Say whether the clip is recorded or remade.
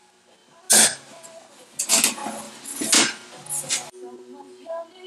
recorded